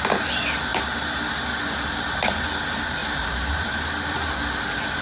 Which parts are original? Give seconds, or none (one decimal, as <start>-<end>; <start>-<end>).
0.0-0.7; 1.3-3.0; 4.4-5.0